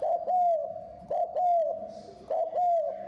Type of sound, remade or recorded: recorded